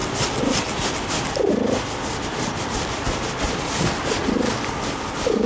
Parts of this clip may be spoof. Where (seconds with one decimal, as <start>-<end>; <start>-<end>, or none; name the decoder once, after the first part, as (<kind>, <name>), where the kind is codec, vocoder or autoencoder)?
none